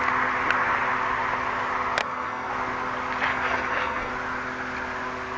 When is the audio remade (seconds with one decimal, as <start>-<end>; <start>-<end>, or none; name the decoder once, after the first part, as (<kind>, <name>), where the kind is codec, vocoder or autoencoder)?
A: 2.0-2.5 (codec, SNAC); 3.3-4.1